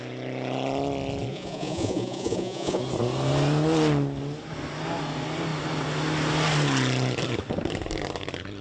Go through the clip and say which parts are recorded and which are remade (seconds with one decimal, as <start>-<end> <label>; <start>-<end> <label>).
0.0-1.3 recorded; 1.3-2.8 remade; 2.8-8.6 recorded